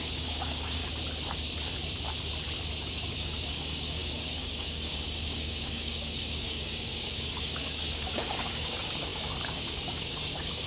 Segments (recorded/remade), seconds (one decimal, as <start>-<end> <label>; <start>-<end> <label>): 0.0-0.8 remade; 0.8-2.8 recorded; 2.8-10.7 remade